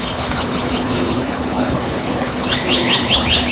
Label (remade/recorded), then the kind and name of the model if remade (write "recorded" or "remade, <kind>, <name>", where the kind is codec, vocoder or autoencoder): remade, codec, HILCodec